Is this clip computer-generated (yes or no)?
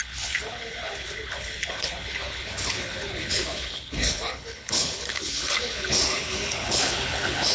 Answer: yes